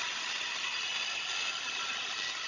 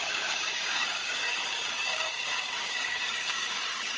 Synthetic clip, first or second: second